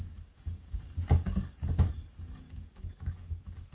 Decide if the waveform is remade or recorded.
remade